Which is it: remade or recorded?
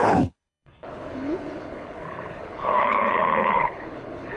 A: remade